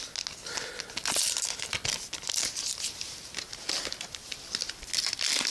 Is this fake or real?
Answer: real